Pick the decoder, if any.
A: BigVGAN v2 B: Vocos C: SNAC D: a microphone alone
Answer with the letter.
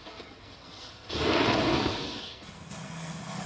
C